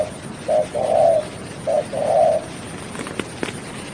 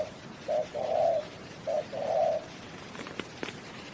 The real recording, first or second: first